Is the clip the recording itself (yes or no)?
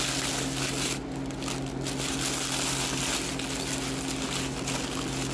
yes